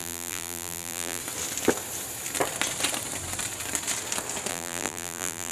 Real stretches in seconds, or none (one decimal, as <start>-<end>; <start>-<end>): 1.2-4.5